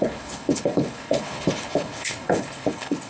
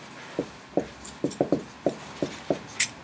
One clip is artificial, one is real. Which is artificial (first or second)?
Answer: first